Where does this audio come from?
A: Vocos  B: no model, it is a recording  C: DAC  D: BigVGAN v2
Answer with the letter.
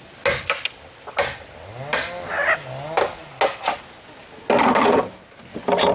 B